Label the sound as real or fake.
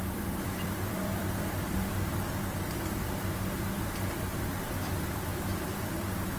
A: fake